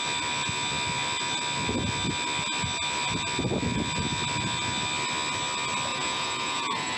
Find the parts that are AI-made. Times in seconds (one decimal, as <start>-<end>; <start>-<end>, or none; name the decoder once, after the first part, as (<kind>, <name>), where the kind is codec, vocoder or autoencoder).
5.9-7.0 (vocoder, Vocos)